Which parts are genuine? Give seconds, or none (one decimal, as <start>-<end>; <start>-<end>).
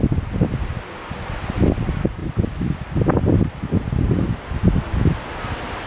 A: 0.0-5.9